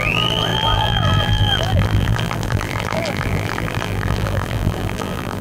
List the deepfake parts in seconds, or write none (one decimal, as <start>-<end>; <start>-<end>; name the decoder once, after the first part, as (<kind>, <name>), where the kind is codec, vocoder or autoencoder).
0.0-5.4 (vocoder, BigVGAN v2)